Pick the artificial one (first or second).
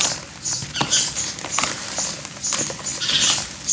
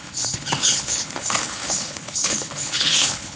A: second